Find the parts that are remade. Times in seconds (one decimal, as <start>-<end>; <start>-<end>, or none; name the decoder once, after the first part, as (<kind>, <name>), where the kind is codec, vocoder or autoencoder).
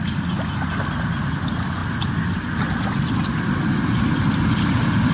none